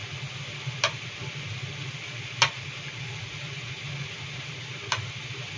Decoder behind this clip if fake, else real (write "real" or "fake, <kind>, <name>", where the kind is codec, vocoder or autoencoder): real